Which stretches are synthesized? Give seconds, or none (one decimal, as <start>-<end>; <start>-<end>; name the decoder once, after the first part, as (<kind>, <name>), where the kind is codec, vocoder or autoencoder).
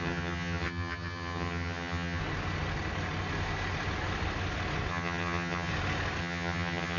0.0-2.2 (vocoder, HiFi-GAN); 4.9-5.7; 6.2-7.0